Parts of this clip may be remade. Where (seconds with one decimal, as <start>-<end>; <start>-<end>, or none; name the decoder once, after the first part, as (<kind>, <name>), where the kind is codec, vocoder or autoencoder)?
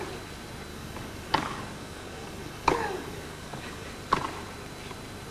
0.7-3.9 (codec, DAC)